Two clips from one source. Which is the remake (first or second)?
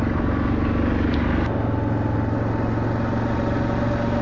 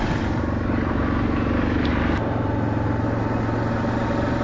second